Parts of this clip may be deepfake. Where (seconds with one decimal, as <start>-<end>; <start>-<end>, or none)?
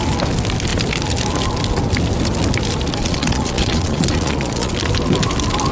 3.0-4.7